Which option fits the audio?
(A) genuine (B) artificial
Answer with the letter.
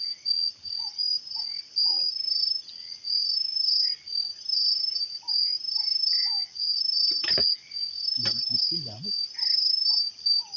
A